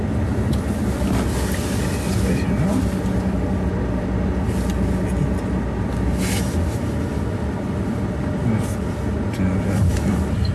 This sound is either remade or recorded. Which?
recorded